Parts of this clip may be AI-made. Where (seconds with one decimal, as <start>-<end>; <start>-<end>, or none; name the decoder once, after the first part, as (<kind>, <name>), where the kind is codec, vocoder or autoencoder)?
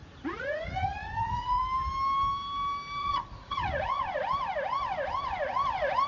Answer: 0.0-1.6 (vocoder, Vocos); 3.0-4.2